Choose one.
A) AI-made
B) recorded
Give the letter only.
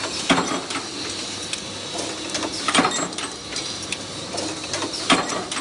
B